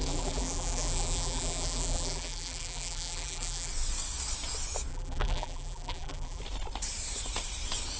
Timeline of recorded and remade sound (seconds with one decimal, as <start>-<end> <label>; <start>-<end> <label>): 0.0-3.7 remade; 3.7-4.9 recorded; 4.9-6.4 remade; 6.4-8.0 recorded